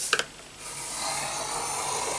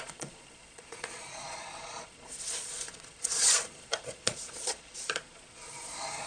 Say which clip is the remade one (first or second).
second